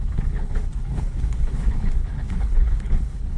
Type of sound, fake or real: fake